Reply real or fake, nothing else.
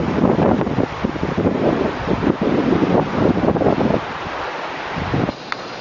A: real